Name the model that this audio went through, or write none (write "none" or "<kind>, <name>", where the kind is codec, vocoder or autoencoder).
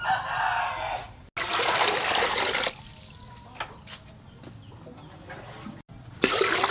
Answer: none